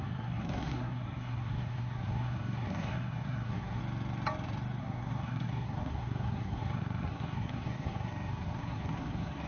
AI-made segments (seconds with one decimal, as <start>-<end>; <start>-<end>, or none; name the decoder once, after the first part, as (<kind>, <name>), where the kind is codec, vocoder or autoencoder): 0.0-3.8 (codec, SNAC); 4.8-9.5